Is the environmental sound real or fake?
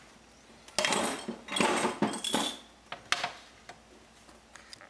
real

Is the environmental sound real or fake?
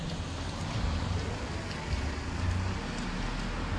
real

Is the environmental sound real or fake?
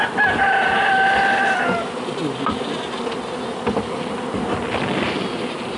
real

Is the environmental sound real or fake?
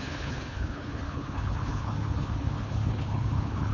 fake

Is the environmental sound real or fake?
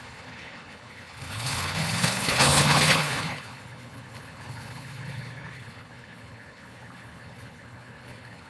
fake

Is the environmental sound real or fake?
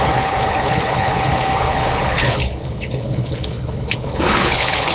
fake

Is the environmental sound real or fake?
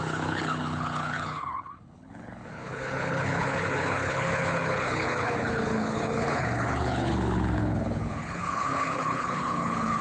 fake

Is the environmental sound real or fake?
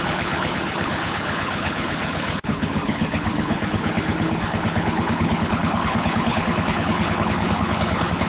fake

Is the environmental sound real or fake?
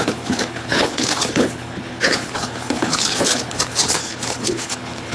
fake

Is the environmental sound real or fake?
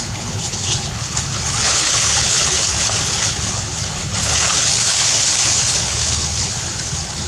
fake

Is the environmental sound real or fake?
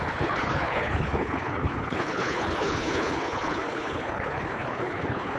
fake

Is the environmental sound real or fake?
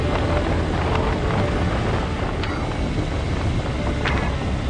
real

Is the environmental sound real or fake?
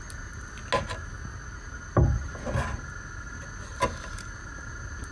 real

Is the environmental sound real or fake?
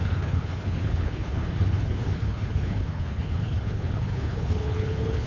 fake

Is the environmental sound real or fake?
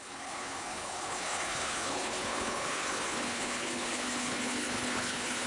fake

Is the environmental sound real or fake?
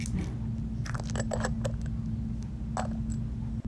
real